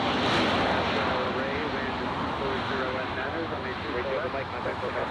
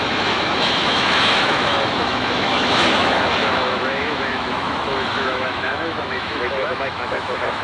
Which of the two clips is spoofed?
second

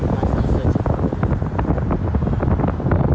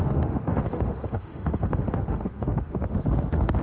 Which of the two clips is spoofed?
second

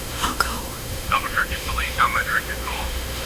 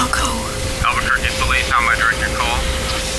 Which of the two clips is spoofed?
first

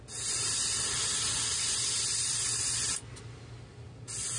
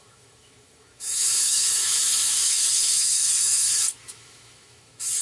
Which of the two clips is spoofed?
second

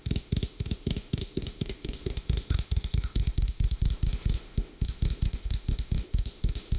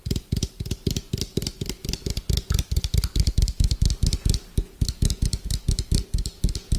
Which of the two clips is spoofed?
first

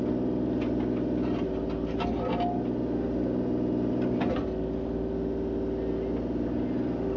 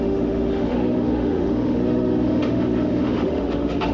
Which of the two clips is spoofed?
second